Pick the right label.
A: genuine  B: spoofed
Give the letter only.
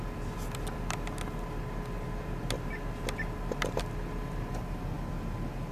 A